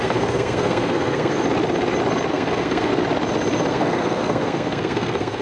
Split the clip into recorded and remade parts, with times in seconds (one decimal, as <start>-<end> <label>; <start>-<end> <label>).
0.0-1.4 remade; 1.4-2.3 recorded; 2.3-2.9 remade; 2.9-3.7 recorded; 3.7-5.4 remade